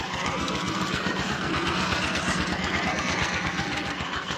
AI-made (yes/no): yes